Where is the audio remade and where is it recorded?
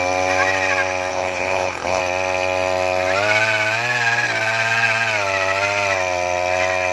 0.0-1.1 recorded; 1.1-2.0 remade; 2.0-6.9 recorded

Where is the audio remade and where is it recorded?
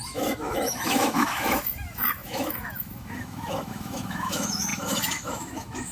0.0-5.9 remade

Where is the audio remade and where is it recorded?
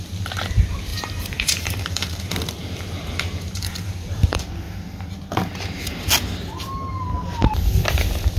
0.0-0.9 recorded; 0.9-4.5 remade; 4.5-8.4 recorded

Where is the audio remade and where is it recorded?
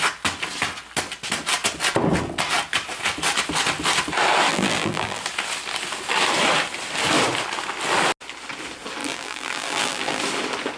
0.0-4.5 recorded; 4.5-5.2 remade; 5.2-9.0 recorded; 9.0-10.2 remade; 10.2-10.8 recorded